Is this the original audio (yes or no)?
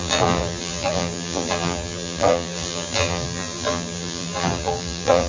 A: no